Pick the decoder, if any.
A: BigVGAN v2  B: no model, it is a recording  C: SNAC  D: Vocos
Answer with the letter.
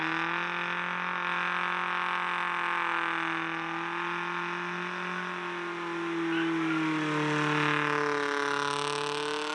B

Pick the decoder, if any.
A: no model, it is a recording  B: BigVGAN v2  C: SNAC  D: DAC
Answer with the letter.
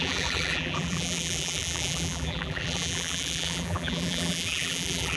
B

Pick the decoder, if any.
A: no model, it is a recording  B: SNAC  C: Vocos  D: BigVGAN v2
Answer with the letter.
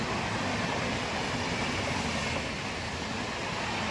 A